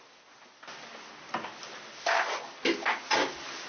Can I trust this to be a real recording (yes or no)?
yes